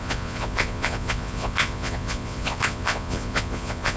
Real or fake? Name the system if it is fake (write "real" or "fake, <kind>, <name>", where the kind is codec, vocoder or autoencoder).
fake, vocoder, Vocos